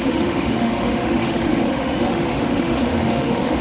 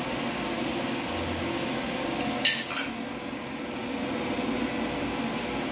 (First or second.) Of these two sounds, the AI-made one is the first